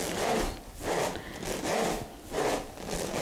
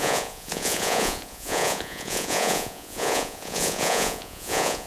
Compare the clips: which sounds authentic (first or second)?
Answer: first